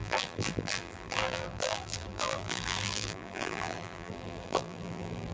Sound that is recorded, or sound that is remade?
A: remade